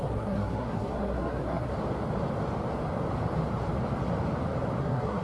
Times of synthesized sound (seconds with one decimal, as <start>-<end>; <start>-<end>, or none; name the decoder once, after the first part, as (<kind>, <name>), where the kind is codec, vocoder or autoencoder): 0.0-1.7 (codec, SNAC); 4.8-5.2